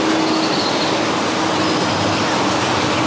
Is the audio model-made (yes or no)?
no